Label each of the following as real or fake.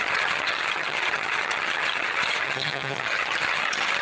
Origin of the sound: fake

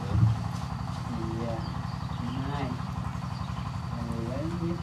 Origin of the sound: real